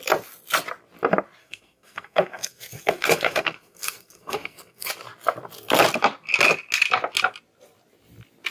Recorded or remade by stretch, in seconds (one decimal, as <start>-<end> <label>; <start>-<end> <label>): 0.0-1.4 recorded; 1.4-4.9 remade; 4.9-8.5 recorded